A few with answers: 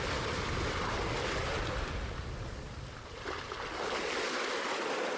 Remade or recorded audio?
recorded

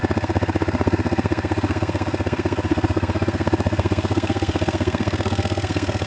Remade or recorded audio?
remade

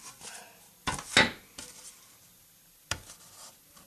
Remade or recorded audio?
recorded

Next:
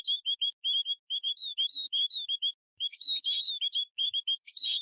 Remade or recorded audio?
remade